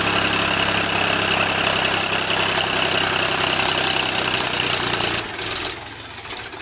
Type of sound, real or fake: real